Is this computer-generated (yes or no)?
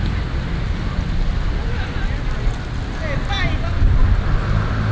no